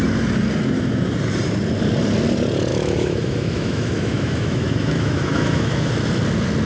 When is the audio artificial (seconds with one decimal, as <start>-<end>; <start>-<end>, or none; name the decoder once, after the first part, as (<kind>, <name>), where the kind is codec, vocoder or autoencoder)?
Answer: 2.7-5.9 (autoencoder, DAC-VAE)